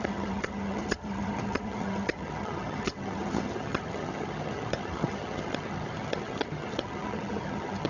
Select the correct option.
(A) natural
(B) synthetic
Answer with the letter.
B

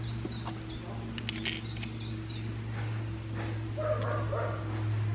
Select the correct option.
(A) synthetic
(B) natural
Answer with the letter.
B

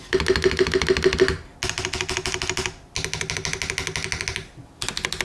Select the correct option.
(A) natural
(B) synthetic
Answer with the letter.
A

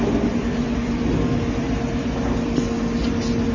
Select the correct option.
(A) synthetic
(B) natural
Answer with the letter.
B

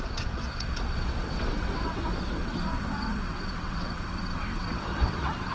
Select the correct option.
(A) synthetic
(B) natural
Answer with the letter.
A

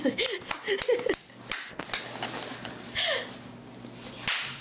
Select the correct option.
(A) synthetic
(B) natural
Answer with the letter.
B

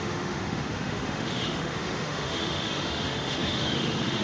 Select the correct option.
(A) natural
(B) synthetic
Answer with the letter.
B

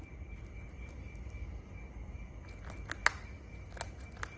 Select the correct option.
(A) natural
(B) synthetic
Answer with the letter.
A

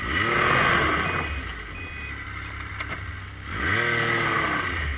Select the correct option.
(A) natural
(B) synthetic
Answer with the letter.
A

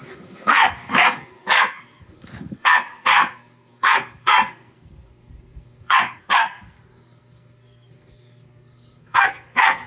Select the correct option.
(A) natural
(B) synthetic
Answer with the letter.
B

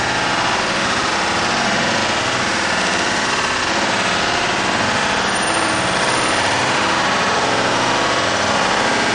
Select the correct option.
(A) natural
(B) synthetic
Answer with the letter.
B